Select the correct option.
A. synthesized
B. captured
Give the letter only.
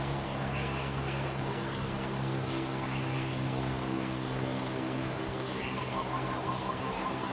A